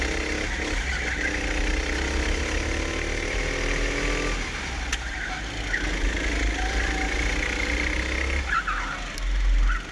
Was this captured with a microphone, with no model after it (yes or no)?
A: yes